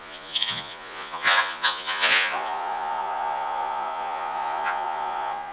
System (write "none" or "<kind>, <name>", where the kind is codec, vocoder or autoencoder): vocoder, Vocos